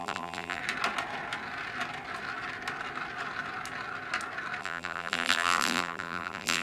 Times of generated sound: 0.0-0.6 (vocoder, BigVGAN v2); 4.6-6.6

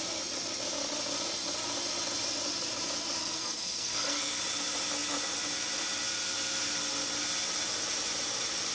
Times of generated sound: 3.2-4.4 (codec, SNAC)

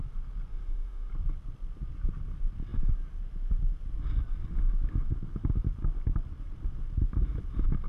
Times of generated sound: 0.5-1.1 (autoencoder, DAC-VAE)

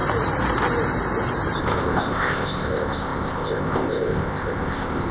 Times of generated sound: 1.6-5.1 (codec, ZipCodec)

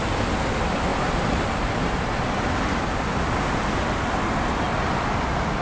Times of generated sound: none

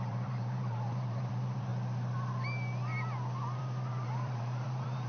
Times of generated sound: 0.0-1.7 (vocoder, BigVGAN v2); 3.6-5.1

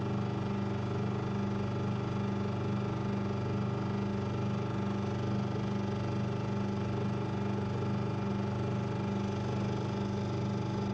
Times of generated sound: none

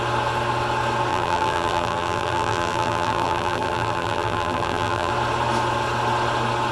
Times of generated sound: 1.1-5.1 (vocoder, BigVGAN v2)